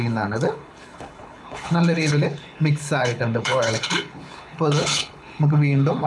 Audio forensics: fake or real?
fake